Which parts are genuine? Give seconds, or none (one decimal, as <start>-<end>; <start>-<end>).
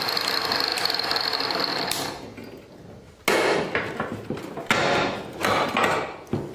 0.0-6.5